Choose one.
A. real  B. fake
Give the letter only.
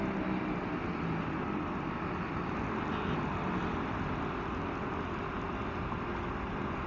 A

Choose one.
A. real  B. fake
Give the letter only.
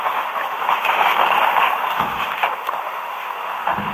B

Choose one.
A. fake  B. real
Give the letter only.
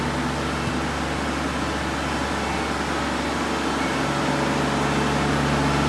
B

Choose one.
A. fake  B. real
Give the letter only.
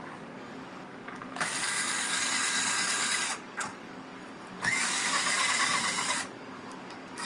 A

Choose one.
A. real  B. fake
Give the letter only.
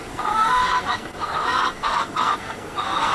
B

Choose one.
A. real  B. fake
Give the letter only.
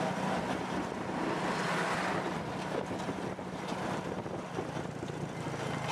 A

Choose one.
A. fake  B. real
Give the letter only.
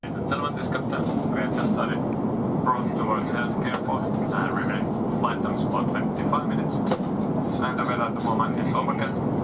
B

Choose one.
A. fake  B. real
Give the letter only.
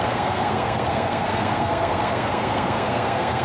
A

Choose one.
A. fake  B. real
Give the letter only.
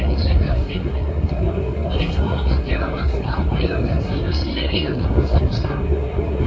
A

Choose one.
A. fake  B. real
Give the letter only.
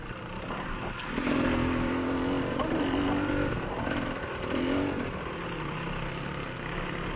B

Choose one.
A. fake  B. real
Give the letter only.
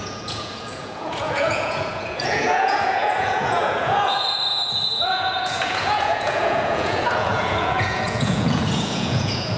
A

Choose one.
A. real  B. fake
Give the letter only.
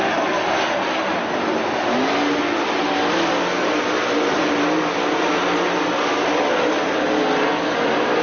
A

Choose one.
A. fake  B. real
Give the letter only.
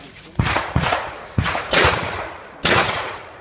A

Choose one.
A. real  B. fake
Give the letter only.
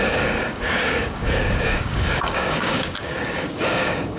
B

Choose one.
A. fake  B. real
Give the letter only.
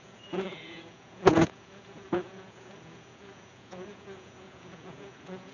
A